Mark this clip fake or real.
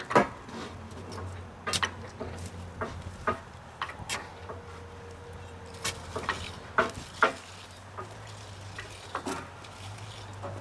real